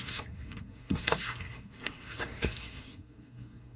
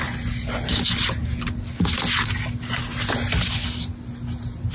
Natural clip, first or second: second